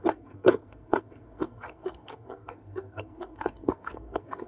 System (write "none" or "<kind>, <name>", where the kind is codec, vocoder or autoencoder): codec, SNAC